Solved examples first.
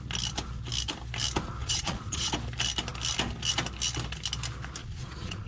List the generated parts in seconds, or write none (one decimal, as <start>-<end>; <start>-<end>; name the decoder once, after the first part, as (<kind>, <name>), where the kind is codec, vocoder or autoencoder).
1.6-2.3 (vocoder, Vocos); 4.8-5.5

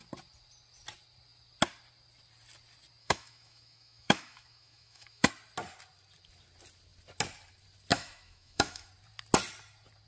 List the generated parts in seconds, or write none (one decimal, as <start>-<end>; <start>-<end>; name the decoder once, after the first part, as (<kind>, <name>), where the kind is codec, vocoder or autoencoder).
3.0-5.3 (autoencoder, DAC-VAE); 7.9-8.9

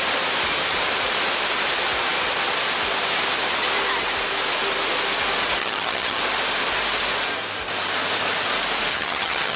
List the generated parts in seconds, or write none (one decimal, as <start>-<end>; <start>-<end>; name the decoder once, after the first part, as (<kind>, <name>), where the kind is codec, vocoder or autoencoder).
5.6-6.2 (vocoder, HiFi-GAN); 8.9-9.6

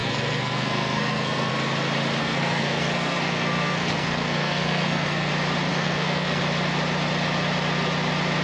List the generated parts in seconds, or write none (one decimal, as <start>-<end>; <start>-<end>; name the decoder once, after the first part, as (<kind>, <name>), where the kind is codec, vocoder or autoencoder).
0.0-1.5 (codec, SNAC); 2.2-5.3; 5.7-6.4

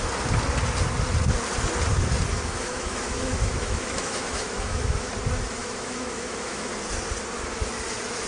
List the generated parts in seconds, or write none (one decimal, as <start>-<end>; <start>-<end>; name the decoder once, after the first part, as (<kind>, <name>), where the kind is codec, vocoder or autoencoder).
2.3-5.1 (autoencoder, DAC-VAE); 5.6-6.7

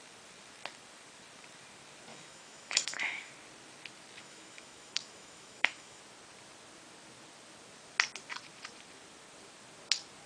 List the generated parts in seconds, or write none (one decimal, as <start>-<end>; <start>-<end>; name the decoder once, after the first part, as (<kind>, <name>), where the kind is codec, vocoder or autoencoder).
2.1-3.3 (autoencoder, DAC-VAE); 4.2-6.0

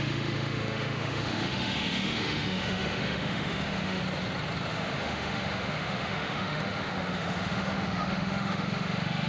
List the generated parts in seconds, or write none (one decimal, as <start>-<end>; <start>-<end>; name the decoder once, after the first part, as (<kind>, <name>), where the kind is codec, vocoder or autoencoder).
0.0-4.0 (autoencoder, DAC-VAE); 4.7-9.3